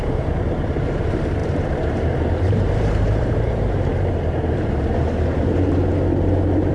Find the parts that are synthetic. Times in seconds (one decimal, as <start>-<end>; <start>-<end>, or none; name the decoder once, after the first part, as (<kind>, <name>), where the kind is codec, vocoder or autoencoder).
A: 0.0-3.9 (vocoder, BigVGAN v2); 5.1-5.8